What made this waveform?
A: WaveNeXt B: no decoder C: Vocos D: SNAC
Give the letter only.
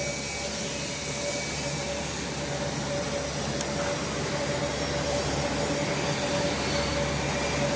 B